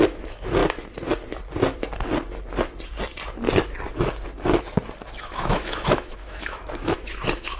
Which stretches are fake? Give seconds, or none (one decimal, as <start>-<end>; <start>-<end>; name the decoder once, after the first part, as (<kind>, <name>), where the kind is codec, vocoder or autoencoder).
0.0-0.6 (autoencoder, DAC-VAE); 5.2-7.6